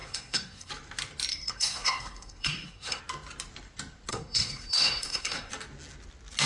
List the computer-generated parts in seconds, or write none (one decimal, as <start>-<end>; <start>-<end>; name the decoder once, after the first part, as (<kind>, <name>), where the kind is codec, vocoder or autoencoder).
0.0-0.7 (codec, SNAC); 1.3-3.0; 4.1-5.5